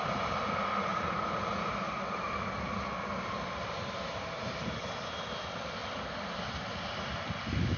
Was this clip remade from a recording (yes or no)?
no